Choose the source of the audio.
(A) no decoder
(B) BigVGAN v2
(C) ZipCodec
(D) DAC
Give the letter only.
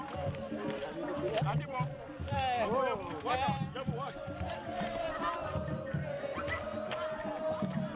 A